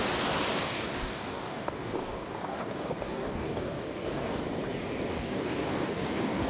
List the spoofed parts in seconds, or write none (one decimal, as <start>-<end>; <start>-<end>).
0.5-4.4; 5.1-6.5